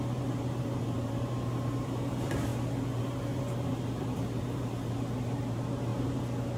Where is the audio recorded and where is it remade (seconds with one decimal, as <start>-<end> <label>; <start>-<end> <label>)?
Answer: 0.0-2.5 remade; 2.5-3.0 recorded; 3.0-5.9 remade; 5.9-6.6 recorded